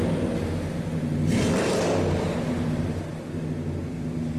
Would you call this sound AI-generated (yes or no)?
no